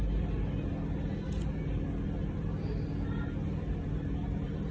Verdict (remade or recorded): recorded